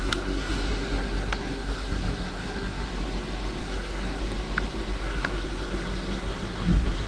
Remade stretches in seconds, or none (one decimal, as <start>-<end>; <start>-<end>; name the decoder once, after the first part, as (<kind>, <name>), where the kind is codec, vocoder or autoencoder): 0.0-2.9 (codec, SNAC); 3.6-4.2; 5.0-7.1